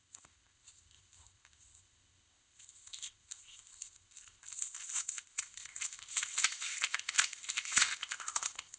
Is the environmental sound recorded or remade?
remade